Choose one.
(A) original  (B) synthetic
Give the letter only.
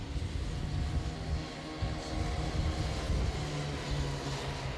A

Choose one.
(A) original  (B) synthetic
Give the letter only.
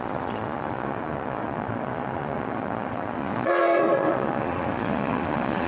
B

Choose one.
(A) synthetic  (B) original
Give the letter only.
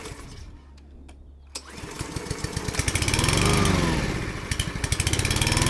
B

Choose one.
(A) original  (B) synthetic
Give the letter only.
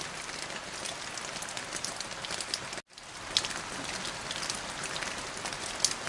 A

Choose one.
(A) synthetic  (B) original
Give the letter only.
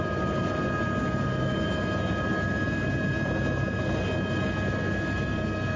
B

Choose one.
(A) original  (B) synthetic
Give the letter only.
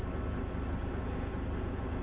A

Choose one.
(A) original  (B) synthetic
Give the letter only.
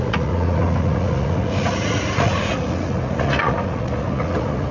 B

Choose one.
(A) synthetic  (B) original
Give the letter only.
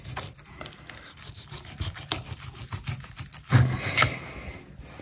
B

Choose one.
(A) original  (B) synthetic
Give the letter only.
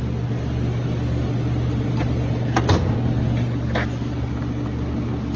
A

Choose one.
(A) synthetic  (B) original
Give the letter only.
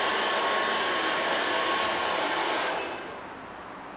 B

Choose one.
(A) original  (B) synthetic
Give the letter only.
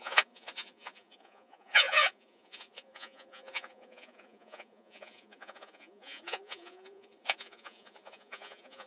B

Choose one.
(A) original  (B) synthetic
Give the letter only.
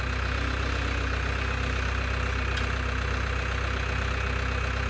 A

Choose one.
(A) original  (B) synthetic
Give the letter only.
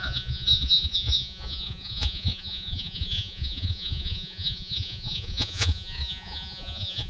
B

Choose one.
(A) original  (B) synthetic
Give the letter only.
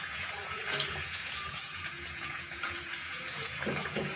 B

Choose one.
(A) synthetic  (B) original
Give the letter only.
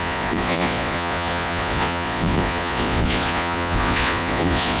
A